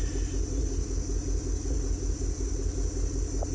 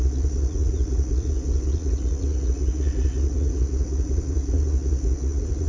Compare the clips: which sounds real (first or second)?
first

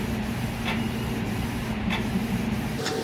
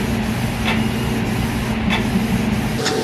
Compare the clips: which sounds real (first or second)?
second